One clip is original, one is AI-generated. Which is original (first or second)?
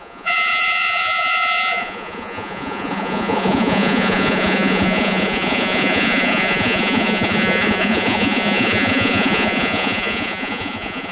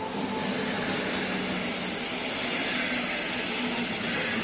second